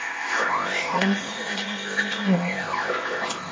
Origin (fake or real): fake